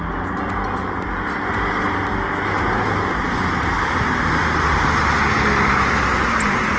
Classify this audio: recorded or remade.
recorded